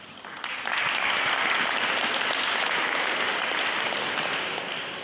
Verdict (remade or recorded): recorded